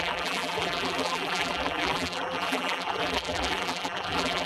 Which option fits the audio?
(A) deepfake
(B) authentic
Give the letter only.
A